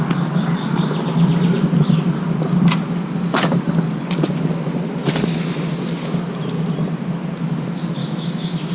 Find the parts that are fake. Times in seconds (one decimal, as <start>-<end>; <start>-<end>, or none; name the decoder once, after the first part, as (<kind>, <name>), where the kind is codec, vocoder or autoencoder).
8.0-8.7 (autoencoder, DAC-VAE)

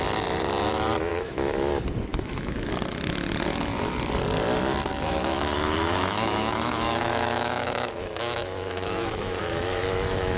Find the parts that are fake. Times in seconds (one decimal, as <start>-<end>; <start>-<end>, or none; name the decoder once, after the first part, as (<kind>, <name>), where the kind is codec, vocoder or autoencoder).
1.1-1.7 (autoencoder, DAC-VAE); 2.1-2.7; 4.9-10.4

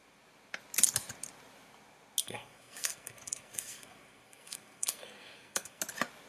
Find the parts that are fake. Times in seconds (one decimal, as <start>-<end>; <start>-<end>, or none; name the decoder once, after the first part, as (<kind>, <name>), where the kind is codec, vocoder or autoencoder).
2.2-5.8 (codec, SNAC)

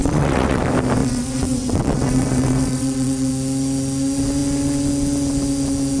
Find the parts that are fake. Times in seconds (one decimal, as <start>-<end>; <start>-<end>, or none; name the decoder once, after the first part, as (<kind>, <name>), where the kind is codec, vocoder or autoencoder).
0.0-0.6 (vocoder, WaveNeXt); 1.0-3.3

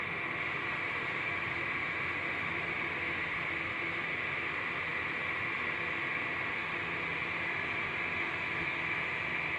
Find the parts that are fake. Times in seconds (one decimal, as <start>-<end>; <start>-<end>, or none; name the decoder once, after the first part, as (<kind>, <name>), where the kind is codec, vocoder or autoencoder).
none

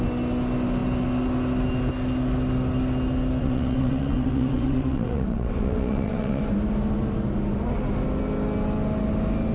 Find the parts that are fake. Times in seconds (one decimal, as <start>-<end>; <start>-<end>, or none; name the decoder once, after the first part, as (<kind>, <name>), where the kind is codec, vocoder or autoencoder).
3.4-6.4 (vocoder, WaveNeXt)

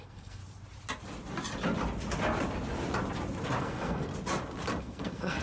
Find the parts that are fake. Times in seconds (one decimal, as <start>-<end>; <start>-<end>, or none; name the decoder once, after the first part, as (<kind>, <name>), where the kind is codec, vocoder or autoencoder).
0.0-0.4 (codec, SNAC); 3.6-4.1; 4.8-5.4

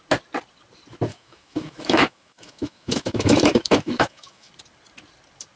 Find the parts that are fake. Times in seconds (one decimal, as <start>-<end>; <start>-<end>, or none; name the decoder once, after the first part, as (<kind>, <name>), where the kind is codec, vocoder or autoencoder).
1.1-4.5 (autoencoder, DAC-VAE)